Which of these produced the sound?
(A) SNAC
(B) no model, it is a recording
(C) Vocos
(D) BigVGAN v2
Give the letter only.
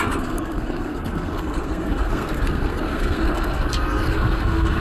A